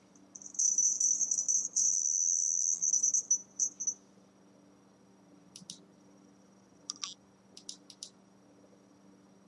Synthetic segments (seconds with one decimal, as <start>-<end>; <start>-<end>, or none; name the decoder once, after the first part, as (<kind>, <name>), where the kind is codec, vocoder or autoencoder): 1.9-2.9 (vocoder, BigVGAN v2)